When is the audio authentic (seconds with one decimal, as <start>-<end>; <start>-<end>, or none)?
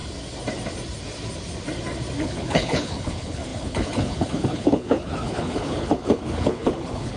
0.0-2.2